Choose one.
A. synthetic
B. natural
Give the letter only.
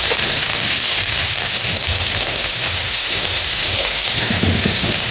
A